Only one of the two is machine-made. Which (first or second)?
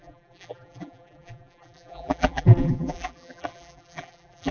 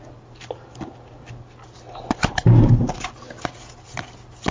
first